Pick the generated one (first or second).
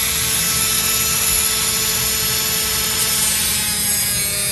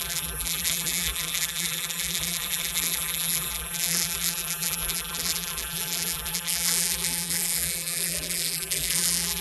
second